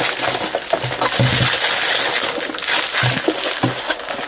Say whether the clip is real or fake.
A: real